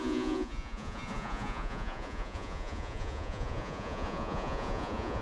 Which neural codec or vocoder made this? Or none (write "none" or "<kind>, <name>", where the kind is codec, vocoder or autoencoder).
vocoder, Vocos